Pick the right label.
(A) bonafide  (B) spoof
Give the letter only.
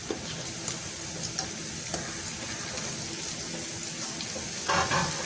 A